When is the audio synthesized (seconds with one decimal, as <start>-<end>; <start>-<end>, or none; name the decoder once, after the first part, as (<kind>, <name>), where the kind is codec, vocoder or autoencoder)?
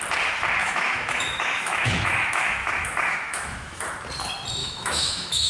0.6-3.9 (autoencoder, DAC-VAE); 4.6-5.5